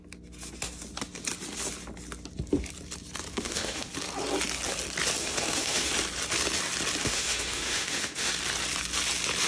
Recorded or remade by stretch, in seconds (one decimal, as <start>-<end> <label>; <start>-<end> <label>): 0.0-3.3 recorded; 3.3-3.9 remade; 3.9-5.2 recorded; 5.2-5.9 remade; 5.9-7.0 recorded; 7.0-8.3 remade; 8.3-9.5 recorded